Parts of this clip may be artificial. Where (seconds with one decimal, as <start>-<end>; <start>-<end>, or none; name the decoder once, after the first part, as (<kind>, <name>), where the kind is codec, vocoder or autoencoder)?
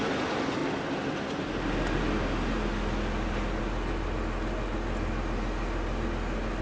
none